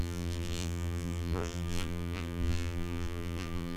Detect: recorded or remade remade